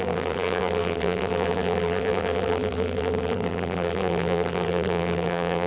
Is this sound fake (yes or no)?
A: yes